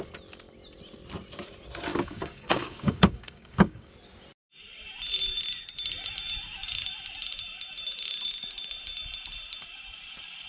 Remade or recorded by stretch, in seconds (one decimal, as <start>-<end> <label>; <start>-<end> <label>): 0.0-1.9 recorded; 1.9-3.9 remade; 3.9-10.5 recorded